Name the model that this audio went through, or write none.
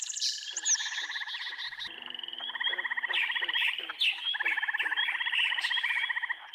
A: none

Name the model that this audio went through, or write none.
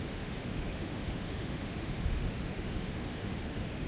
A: autoencoder, DAC-VAE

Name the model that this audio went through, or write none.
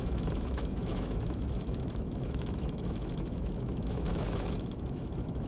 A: autoencoder, DAC-VAE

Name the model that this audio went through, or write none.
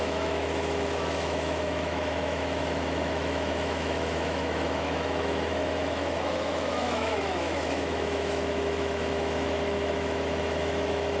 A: autoencoder, DAC-VAE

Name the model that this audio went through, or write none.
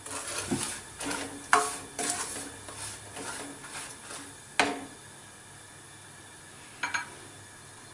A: none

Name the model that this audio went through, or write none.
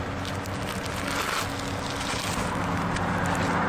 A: none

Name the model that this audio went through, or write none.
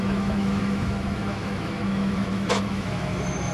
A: autoencoder, DAC-VAE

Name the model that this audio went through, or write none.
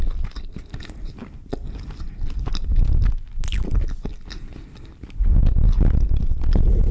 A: none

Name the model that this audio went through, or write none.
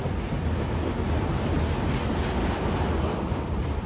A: none